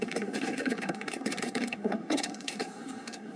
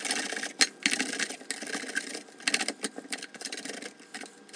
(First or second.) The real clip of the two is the second